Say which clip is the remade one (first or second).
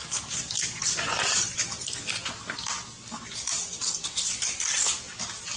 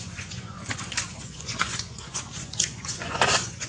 second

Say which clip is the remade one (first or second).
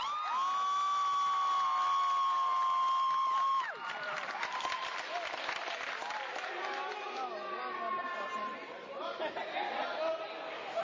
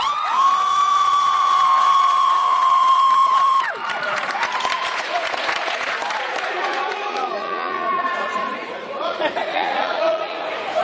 second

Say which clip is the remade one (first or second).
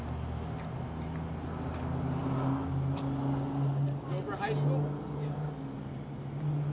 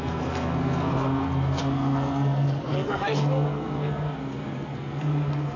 second